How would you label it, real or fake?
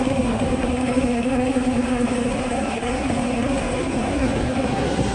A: fake